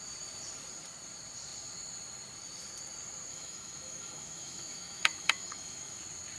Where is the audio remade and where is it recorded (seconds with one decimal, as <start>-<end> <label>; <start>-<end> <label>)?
0.0-3.3 recorded; 3.3-6.0 remade; 6.0-6.4 recorded

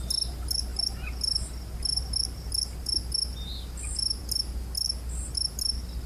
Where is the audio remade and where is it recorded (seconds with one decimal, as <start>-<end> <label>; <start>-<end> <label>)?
0.0-6.1 recorded

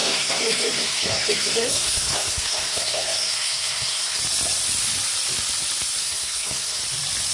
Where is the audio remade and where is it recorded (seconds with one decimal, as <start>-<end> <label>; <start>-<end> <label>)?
0.0-4.2 remade; 4.2-6.0 recorded; 6.0-6.8 remade; 6.8-7.3 recorded

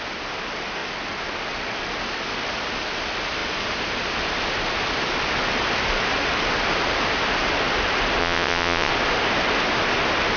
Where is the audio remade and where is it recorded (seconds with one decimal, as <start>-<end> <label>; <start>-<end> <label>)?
0.0-8.2 recorded; 8.2-8.9 remade; 8.9-10.4 recorded

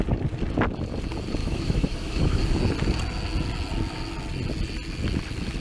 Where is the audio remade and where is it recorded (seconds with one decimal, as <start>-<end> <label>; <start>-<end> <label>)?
0.0-1.4 recorded; 1.4-2.4 remade; 2.4-5.6 recorded

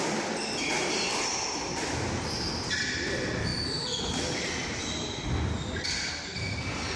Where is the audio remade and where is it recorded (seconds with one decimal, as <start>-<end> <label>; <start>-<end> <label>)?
0.0-7.0 recorded

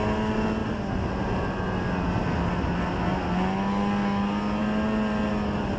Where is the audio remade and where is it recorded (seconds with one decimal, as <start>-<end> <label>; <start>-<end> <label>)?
0.0-5.8 recorded

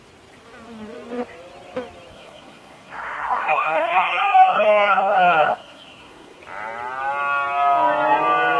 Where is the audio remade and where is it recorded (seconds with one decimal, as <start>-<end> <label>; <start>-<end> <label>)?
0.0-2.1 recorded; 2.1-6.4 remade; 6.4-8.6 recorded